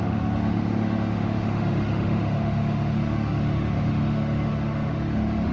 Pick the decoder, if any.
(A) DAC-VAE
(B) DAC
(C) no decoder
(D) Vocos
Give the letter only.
A